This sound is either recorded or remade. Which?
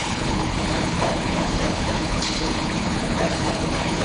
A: remade